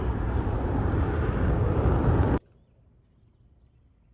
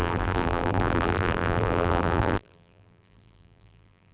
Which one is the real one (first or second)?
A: first